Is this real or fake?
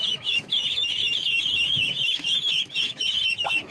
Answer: fake